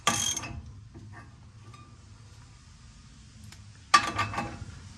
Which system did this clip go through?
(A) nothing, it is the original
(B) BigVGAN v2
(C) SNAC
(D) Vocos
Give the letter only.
A